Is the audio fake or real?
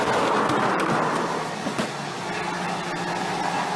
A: real